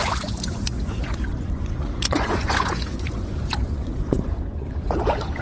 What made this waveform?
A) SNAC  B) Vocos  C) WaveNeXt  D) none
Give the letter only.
B